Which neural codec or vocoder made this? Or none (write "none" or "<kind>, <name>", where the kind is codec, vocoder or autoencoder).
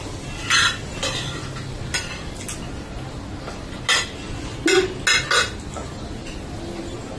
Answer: none